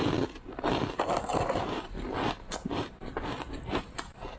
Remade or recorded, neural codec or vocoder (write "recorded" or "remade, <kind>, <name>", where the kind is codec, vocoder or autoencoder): recorded